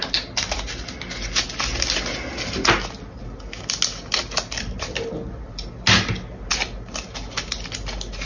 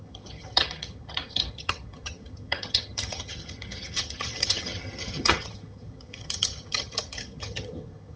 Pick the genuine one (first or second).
first